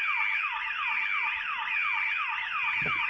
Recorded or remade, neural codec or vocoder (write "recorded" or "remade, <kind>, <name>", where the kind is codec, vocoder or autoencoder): recorded